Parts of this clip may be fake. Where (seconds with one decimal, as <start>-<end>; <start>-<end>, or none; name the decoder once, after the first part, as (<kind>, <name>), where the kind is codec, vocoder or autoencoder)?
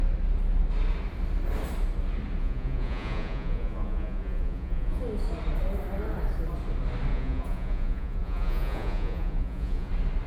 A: 2.4-5.0 (vocoder, Vocos); 7.1-9.9